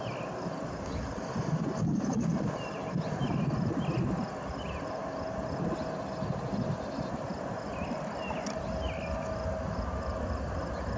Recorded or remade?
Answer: recorded